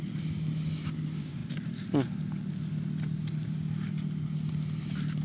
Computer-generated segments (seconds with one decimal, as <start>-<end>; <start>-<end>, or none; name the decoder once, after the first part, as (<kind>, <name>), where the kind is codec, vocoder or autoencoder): none